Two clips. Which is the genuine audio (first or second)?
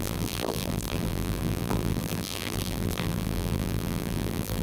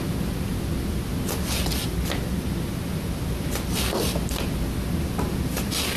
second